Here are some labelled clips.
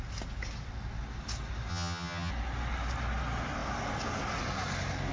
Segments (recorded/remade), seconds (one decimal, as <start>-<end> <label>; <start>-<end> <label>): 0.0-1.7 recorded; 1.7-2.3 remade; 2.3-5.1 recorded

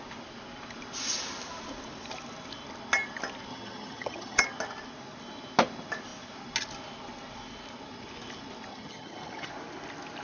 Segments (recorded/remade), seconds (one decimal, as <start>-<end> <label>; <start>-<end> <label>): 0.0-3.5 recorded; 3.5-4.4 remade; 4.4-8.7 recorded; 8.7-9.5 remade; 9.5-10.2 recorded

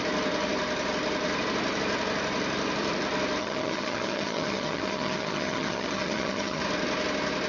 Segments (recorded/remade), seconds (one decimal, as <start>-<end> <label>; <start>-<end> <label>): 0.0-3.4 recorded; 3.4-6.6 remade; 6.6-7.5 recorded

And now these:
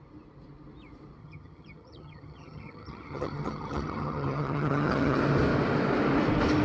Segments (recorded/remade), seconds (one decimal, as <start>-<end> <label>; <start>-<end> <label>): 0.0-1.2 recorded; 1.2-5.2 remade; 5.2-6.6 recorded